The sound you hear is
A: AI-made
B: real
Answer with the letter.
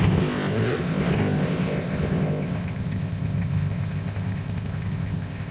A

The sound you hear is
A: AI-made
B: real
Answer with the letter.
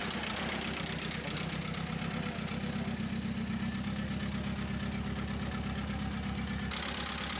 B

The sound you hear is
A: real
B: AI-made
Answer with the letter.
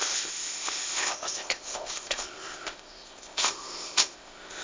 B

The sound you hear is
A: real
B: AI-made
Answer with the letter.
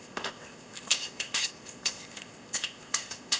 B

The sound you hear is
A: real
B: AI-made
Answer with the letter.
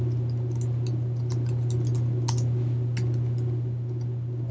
A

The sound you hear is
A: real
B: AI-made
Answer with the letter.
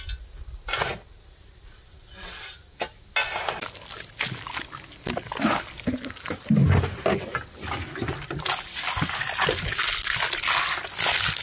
A